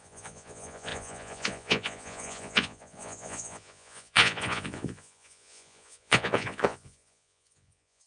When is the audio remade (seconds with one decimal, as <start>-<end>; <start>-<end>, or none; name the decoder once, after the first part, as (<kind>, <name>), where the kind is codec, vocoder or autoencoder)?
0.0-8.1 (vocoder, Vocos)